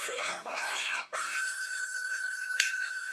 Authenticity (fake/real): fake